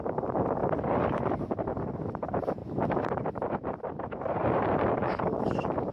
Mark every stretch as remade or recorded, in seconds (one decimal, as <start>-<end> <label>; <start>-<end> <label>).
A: 0.0-0.6 remade; 0.6-1.2 recorded; 1.2-5.9 remade